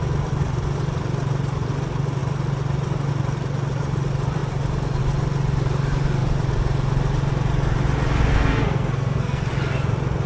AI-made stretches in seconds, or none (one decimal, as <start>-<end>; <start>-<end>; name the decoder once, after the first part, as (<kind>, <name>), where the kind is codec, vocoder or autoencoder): 8.3-9.5 (codec, SNAC)